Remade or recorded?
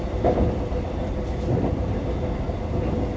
recorded